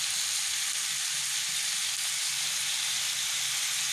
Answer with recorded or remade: recorded